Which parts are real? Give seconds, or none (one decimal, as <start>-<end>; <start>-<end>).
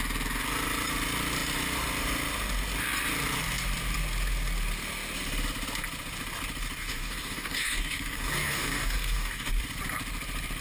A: 0.0-6.8; 9.6-10.6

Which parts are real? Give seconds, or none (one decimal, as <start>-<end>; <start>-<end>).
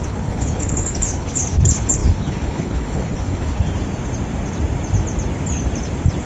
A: 3.7-6.3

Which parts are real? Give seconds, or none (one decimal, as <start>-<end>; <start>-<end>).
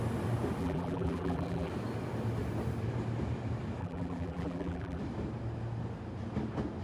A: 0.0-0.6; 1.7-3.8; 5.0-6.8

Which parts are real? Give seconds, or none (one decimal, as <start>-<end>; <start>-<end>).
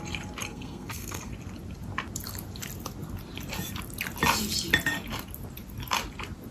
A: 0.0-0.5; 1.3-6.5